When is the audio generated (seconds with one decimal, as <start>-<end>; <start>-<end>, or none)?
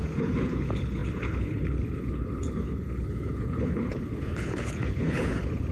0.0-5.7